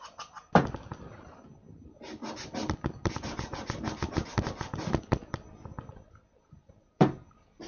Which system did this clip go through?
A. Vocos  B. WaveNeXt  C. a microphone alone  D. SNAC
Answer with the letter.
C